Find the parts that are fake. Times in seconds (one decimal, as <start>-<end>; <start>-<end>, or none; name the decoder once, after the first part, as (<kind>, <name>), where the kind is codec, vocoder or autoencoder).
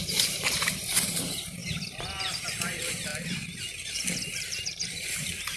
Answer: 0.0-1.6 (vocoder, BigVGAN v2); 2.2-3.1; 4.3-5.6